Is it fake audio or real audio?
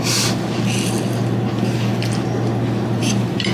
real